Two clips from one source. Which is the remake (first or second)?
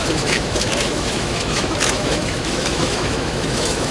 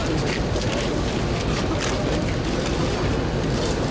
first